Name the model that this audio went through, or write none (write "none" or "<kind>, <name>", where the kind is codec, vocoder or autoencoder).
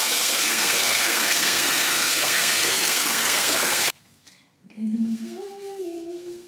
codec, SNAC